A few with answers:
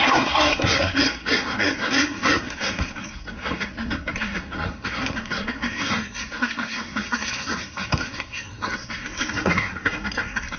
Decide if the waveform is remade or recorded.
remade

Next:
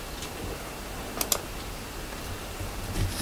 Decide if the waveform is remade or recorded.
recorded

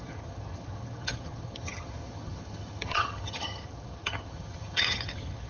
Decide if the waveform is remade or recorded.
remade